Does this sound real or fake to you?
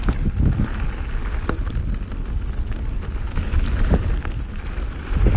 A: real